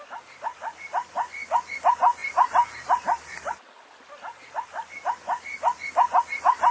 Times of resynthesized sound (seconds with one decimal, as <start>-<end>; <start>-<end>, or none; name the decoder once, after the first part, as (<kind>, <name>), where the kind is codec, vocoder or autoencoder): none